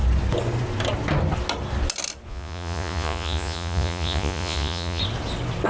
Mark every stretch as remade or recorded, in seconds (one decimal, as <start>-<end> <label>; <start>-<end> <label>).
0.0-2.3 recorded; 2.3-5.0 remade; 5.0-5.7 recorded